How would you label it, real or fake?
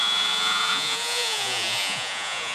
fake